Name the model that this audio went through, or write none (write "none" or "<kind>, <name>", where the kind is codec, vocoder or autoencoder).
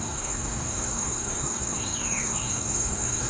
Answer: codec, SNAC